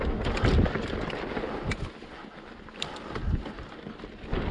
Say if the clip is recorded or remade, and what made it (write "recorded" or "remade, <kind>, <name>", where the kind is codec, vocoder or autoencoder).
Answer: recorded